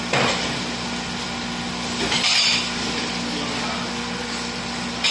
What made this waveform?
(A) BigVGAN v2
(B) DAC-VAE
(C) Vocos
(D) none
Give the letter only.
D